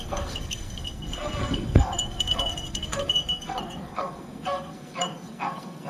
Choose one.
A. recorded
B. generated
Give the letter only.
B